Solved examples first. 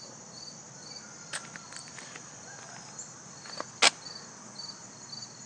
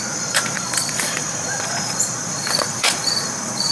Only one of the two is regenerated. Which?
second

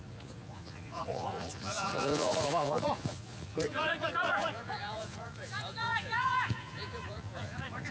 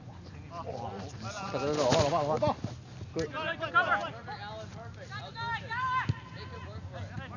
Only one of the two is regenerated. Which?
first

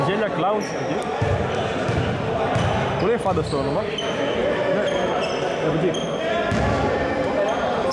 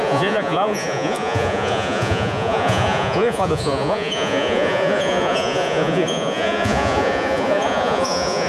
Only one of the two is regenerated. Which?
second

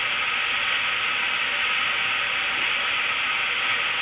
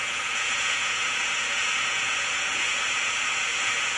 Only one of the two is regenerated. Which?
second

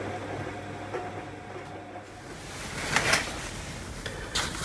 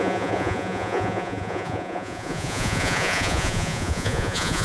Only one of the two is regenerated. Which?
second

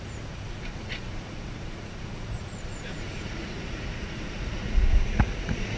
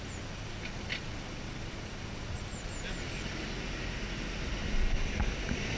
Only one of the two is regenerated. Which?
first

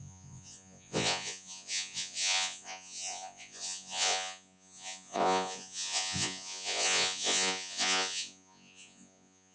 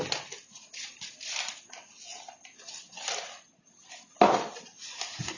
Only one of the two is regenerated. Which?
first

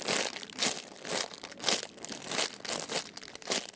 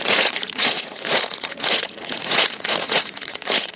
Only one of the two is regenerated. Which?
second